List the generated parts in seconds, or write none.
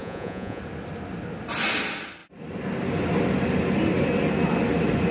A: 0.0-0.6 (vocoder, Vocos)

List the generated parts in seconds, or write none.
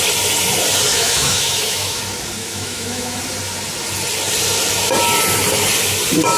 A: 0.9-2.0 (autoencoder, DAC-VAE); 2.4-3.2